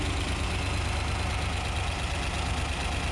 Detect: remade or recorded recorded